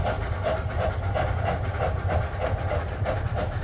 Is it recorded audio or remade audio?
recorded